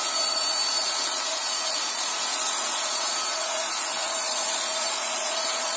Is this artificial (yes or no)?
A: yes